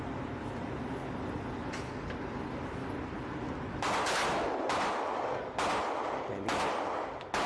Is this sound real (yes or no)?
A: yes